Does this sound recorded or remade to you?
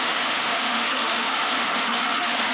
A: remade